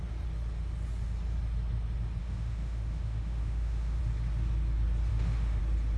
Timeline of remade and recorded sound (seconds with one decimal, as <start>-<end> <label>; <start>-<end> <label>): 0.0-2.2 recorded; 2.2-4.0 remade; 4.0-5.1 recorded; 5.1-5.6 remade; 5.6-6.0 recorded